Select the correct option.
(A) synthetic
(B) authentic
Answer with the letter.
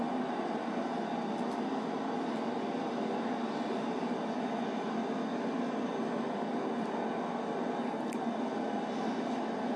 B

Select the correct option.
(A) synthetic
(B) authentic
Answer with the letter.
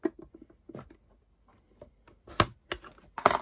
B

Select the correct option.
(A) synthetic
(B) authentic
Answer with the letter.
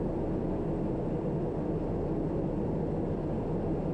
A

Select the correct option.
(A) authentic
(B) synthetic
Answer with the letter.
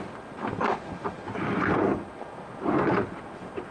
B